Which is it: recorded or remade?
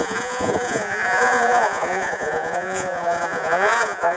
remade